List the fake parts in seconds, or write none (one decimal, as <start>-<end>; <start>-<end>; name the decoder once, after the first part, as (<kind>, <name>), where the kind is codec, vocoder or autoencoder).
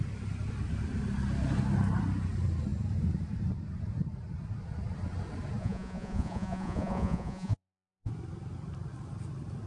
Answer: 5.6-8.1 (vocoder, Vocos)